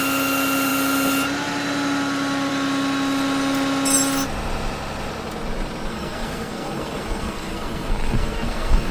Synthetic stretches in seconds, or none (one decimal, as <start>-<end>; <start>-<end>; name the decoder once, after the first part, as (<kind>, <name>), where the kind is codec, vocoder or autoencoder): 5.9-8.9 (codec, SNAC)